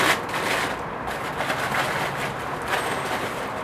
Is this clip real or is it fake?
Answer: real